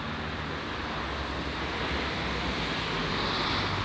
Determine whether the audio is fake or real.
real